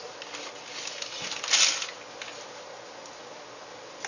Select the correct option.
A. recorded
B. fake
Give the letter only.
A